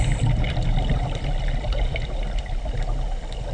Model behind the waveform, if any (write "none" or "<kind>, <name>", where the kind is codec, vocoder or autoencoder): none